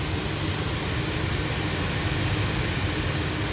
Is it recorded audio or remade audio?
recorded